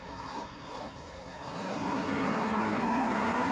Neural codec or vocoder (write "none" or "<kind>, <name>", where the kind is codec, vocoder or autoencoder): codec, SNAC